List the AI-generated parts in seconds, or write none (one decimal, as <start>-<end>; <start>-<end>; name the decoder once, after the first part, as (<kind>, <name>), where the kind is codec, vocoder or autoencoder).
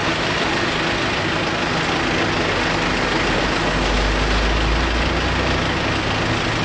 none